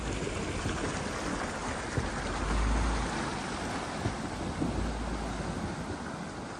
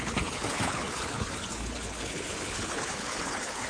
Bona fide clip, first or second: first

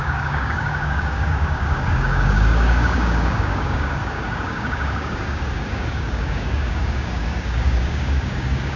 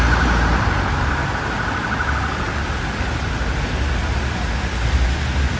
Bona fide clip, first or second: second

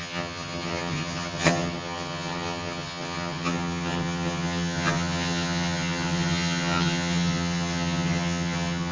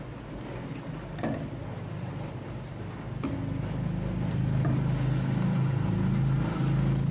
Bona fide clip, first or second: second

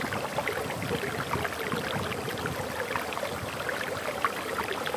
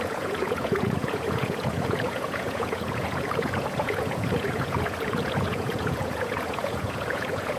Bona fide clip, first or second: first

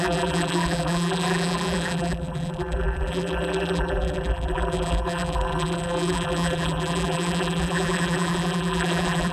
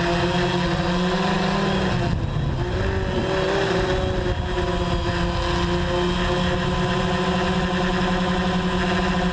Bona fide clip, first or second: second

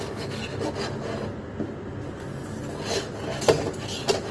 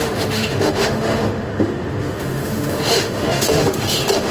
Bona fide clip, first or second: first